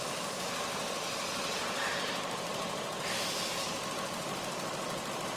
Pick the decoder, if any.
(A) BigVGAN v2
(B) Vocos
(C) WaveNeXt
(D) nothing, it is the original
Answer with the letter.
A